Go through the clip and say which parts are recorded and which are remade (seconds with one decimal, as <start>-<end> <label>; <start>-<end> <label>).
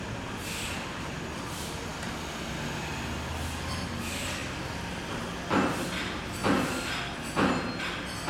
0.0-8.3 recorded